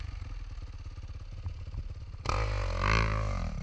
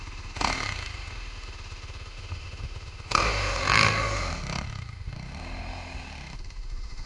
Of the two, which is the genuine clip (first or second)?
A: first